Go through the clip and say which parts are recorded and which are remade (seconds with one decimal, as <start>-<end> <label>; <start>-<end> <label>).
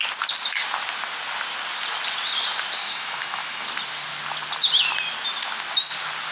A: 0.0-2.8 recorded; 2.8-3.7 remade; 3.7-6.3 recorded